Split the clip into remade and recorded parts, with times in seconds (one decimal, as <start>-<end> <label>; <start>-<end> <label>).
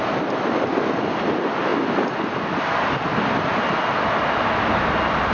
0.0-5.3 recorded